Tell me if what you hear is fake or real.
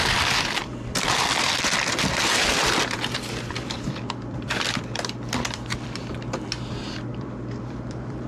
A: fake